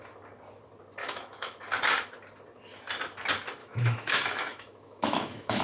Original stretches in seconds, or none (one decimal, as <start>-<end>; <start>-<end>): 0.0-1.0; 1.6-3.6